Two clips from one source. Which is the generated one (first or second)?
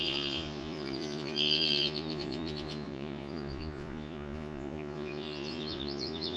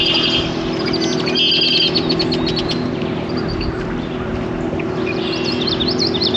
first